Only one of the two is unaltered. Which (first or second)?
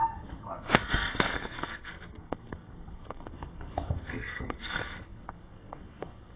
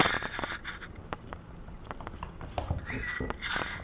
second